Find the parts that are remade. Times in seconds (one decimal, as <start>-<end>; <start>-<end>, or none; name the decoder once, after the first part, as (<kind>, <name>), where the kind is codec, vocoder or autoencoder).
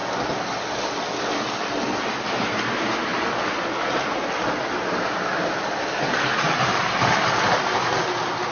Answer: none